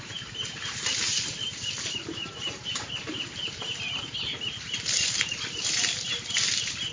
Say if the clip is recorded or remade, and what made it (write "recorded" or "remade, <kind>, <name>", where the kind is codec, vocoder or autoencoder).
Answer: remade, vocoder, BigVGAN v2